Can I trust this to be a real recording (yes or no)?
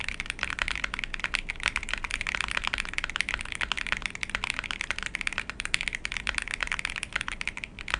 yes